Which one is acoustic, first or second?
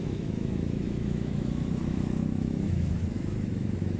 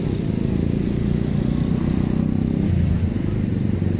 second